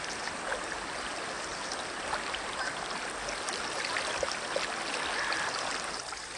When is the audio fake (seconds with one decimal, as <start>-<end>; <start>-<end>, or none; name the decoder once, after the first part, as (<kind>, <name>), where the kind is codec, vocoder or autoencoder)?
none